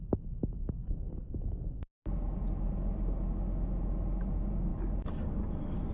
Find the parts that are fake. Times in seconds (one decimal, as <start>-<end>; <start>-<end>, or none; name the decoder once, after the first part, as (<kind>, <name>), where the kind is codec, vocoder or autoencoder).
none